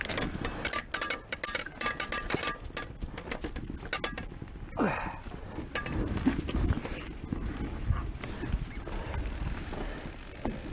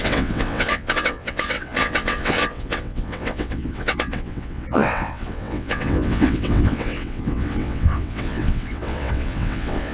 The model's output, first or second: second